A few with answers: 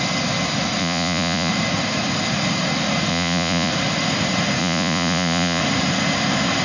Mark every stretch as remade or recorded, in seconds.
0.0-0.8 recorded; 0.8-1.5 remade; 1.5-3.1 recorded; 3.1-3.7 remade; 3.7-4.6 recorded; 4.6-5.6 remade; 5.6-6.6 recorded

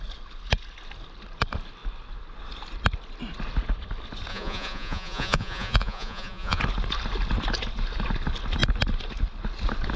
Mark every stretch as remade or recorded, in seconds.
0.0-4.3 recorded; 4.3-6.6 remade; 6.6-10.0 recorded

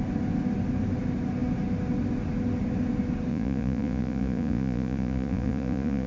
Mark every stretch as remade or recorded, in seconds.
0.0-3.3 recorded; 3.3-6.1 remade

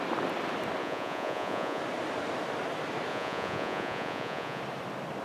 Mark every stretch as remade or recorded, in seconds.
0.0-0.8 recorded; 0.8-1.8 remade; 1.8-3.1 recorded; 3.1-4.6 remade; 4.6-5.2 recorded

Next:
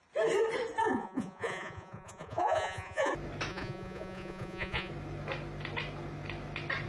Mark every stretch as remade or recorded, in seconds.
0.0-0.8 recorded; 0.8-3.1 remade; 3.1-3.5 recorded; 3.5-4.9 remade; 4.9-6.9 recorded